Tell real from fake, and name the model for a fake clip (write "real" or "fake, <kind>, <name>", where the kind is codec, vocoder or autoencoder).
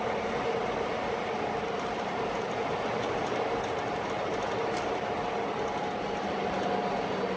real